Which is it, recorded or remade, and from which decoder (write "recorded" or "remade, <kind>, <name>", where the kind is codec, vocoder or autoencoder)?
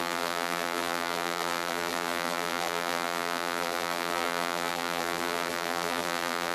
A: remade, vocoder, BigVGAN v2